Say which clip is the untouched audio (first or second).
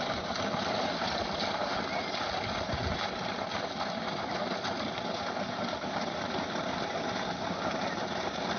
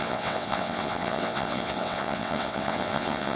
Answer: first